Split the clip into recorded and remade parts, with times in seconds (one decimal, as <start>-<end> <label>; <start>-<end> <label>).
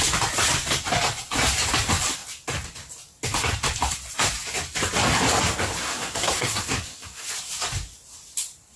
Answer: 0.0-5.8 recorded; 5.8-7.3 remade; 7.3-8.8 recorded